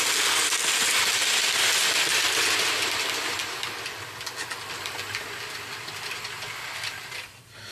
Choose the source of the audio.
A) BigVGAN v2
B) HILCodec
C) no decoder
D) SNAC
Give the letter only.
C